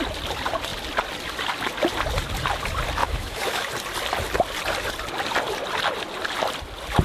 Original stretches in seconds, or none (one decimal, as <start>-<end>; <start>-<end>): 0.0-3.0; 3.7-7.0